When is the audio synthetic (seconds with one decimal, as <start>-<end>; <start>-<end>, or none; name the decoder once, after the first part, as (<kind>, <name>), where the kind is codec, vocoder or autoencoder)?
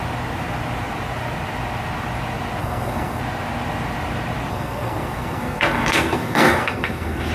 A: 2.6-3.2 (codec, SNAC); 4.5-7.3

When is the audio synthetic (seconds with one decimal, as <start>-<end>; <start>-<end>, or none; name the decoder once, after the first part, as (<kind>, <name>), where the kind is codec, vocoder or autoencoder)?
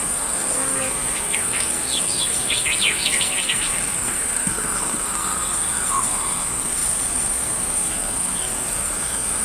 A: 0.0-9.4 (codec, SNAC)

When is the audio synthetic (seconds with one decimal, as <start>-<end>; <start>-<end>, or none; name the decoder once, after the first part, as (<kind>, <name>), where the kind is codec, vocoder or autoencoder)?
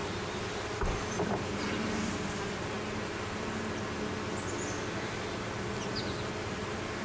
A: none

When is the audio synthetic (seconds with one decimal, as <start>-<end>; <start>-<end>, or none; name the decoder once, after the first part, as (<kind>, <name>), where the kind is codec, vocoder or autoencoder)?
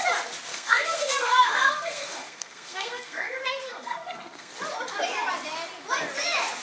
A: 0.5-4.5 (codec, SNAC)